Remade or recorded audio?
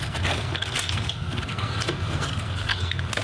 remade